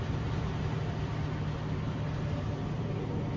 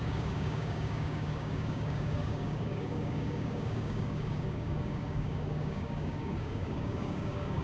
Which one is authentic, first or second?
first